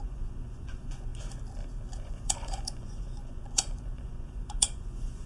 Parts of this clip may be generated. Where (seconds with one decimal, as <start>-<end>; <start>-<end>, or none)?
0.0-1.1; 2.0-5.3